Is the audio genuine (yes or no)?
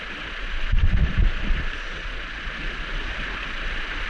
yes